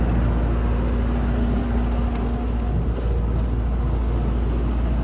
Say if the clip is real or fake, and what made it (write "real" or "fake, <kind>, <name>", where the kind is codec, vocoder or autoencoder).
real